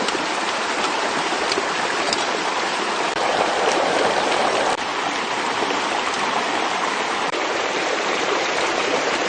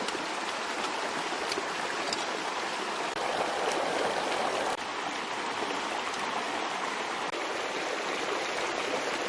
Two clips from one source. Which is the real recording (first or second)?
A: second